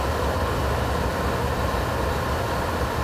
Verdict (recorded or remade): recorded